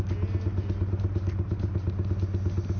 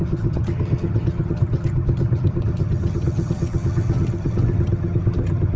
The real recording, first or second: first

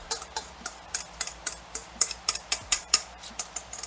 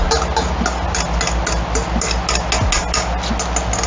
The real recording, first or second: second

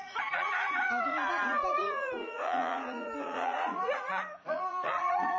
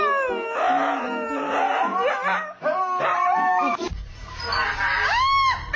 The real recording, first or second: second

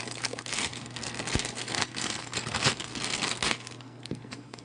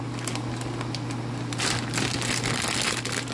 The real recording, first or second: second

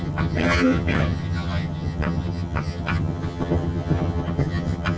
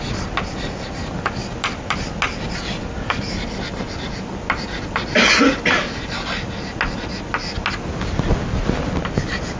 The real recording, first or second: second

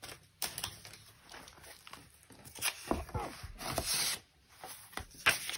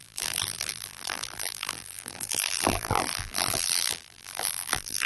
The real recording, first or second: first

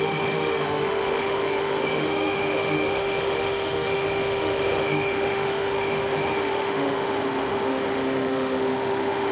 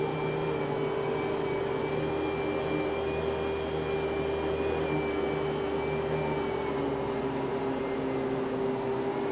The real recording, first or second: second